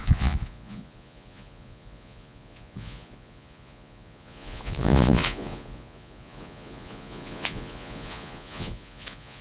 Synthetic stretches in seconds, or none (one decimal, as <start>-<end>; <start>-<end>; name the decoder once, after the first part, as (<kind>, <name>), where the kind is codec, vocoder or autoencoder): 0.0-9.4 (vocoder, Vocos)